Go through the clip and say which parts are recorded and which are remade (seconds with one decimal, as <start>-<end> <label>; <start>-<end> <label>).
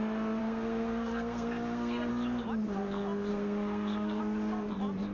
0.0-0.4 recorded; 0.4-2.1 remade; 2.1-3.3 recorded; 3.3-4.2 remade; 4.2-5.1 recorded